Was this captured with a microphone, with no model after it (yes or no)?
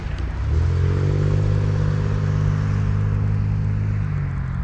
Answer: yes